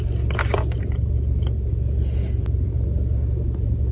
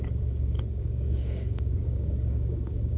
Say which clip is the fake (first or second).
second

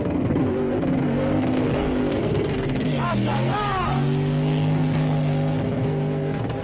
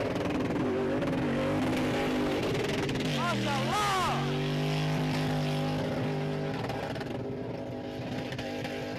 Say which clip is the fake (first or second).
first